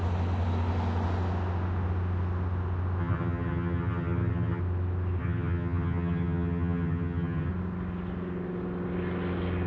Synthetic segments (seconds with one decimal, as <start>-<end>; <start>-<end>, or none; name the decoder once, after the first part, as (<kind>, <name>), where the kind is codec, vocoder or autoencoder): 3.0-4.6 (vocoder, HiFi-GAN); 5.2-7.5